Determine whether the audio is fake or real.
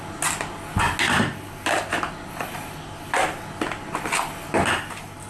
real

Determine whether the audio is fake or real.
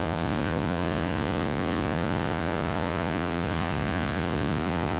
fake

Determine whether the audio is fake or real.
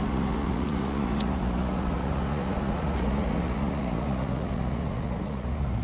fake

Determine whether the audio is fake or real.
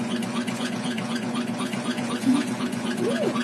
fake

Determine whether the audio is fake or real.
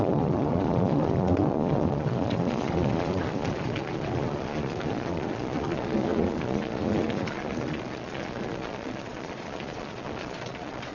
fake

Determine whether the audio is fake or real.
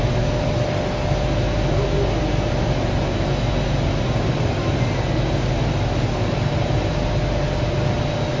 real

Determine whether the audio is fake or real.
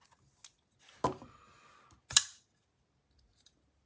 real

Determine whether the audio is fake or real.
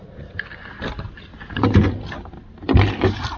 real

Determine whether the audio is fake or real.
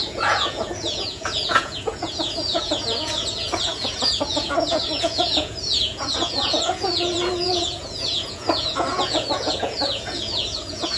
fake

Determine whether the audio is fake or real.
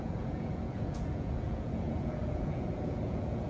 fake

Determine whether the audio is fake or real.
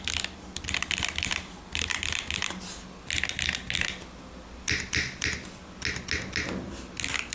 real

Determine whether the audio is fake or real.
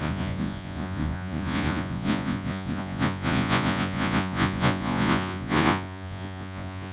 fake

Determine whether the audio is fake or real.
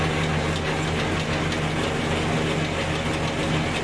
real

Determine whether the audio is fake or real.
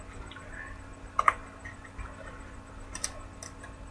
real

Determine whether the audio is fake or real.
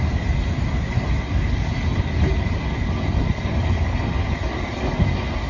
real